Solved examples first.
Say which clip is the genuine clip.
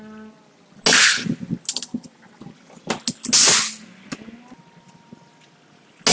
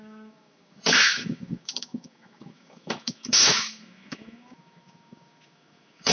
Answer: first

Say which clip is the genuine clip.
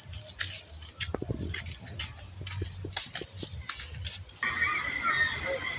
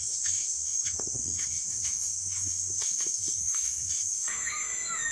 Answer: first